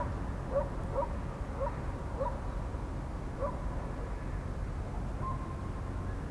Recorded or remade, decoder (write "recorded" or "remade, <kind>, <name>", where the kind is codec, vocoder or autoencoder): recorded